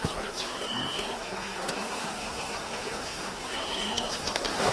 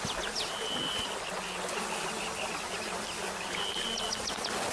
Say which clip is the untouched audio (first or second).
second